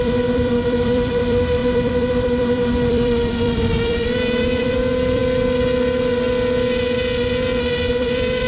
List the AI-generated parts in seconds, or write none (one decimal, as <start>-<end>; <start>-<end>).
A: 0.0-5.2; 7.9-8.5